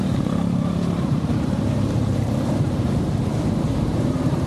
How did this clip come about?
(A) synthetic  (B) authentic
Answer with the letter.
A